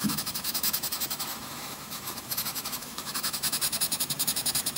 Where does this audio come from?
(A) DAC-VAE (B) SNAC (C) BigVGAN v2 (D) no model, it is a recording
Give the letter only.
A